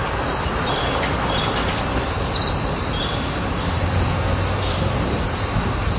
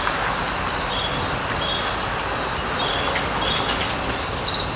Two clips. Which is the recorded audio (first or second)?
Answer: second